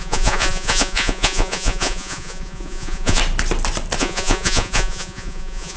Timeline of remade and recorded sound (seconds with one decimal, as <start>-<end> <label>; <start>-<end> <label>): 0.0-3.2 remade; 3.2-4.0 recorded; 4.0-5.8 remade